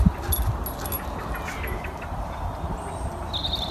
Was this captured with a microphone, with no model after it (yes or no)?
yes